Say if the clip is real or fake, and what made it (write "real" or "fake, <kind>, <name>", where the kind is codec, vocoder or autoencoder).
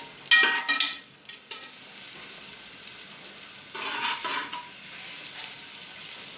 real